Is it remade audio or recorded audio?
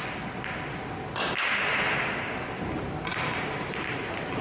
recorded